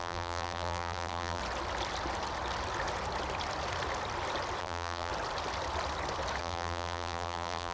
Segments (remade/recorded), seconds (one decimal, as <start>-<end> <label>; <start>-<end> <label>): 0.0-1.4 remade; 1.4-4.6 recorded; 4.6-5.1 remade; 5.1-6.4 recorded; 6.4-7.7 remade